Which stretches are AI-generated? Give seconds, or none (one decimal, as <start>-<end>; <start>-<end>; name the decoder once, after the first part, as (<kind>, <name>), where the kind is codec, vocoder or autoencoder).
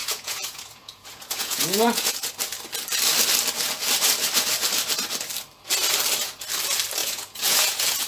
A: 0.0-2.3 (vocoder, Vocos); 7.0-8.1